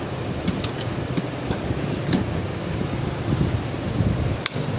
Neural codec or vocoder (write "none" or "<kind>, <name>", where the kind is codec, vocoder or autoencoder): none